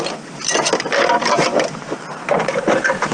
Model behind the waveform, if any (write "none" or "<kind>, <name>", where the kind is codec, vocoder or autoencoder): vocoder, BigVGAN v2